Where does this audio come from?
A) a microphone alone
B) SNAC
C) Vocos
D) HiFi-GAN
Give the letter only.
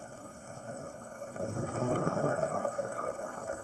B